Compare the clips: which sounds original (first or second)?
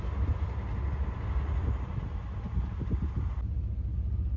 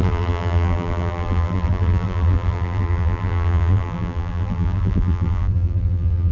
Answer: first